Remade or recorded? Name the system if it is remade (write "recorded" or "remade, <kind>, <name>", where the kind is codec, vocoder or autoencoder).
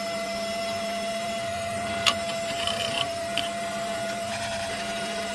remade, vocoder, BigVGAN v2